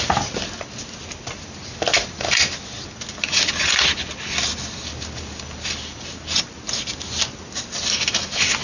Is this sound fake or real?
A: real